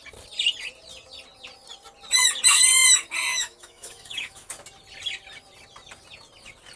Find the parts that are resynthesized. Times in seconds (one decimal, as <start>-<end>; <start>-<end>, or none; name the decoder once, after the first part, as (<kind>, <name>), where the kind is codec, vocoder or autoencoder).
3.3-4.5 (autoencoder, DAC-VAE)